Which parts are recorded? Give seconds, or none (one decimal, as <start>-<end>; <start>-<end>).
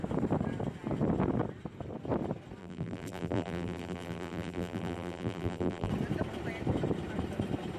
0.0-2.6; 5.9-7.8